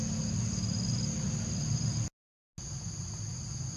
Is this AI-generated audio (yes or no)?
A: no